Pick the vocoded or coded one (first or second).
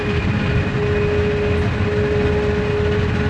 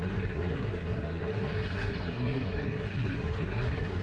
second